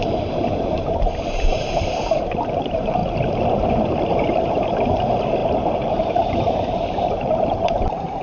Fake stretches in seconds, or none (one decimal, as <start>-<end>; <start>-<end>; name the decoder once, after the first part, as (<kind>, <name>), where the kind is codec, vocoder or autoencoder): 0.0-3.0 (vocoder, BigVGAN v2); 3.5-8.2